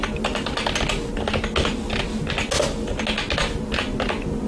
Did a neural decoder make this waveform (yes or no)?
no